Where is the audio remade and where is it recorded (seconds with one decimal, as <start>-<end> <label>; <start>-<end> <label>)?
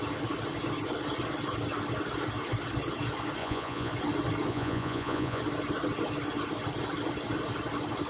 0.0-3.4 recorded; 3.4-3.9 remade; 3.9-4.5 recorded; 4.5-5.4 remade; 5.4-8.1 recorded